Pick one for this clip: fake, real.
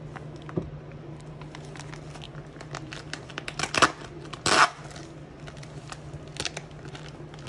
real